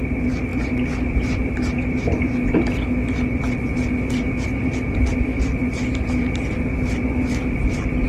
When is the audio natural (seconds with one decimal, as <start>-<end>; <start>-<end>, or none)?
0.0-8.1